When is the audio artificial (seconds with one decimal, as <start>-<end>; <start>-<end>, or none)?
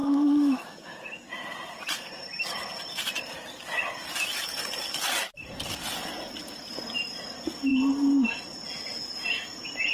0.0-1.0